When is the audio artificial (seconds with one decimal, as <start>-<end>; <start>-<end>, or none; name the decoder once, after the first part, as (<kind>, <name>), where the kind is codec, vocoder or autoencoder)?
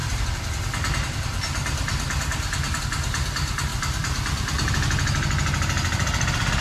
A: 3.7-4.7 (vocoder, BigVGAN v2)